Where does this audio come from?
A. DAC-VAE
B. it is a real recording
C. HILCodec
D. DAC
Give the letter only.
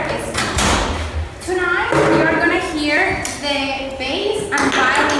B